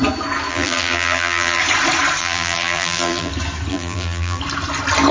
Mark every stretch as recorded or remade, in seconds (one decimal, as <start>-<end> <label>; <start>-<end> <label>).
0.0-0.5 recorded; 0.5-1.6 remade; 1.6-2.2 recorded; 2.2-3.3 remade; 3.3-3.7 recorded; 3.7-4.4 remade; 4.4-5.1 recorded